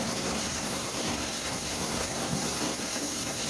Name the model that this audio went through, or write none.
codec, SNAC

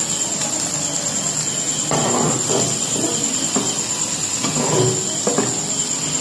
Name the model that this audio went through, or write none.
none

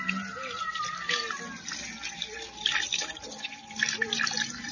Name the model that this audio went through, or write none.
none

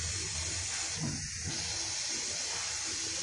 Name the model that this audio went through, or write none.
none